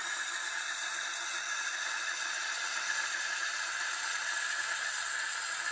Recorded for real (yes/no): yes